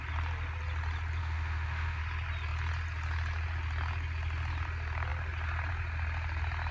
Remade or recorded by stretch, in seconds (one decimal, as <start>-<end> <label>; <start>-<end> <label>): 0.0-1.2 recorded; 1.2-2.0 remade; 2.0-6.7 recorded